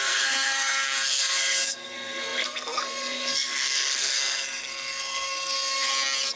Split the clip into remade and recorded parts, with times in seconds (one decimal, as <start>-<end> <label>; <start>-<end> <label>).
0.0-5.9 remade; 5.9-6.4 recorded